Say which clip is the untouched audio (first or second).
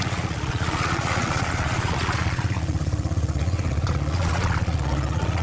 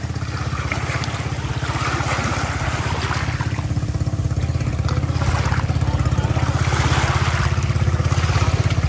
second